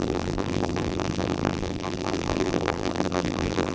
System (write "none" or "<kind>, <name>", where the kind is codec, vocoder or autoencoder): vocoder, BigVGAN v2